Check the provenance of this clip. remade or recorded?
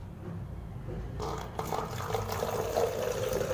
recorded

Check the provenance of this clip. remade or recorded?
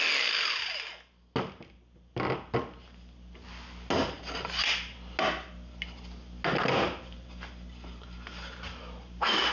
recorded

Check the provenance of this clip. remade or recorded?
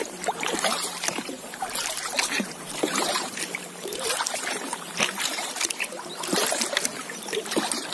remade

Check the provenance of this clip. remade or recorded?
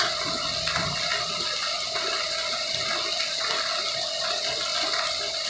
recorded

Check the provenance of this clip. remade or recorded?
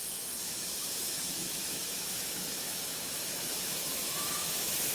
remade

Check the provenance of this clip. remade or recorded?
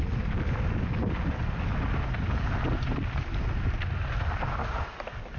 recorded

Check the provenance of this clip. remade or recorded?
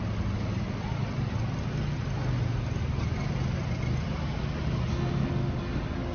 recorded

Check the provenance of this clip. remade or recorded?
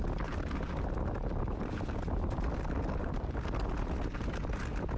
recorded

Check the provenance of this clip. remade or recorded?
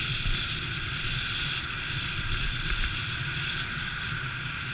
recorded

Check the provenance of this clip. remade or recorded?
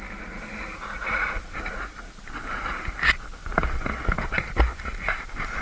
recorded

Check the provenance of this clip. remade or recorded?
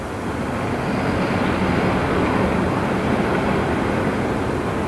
recorded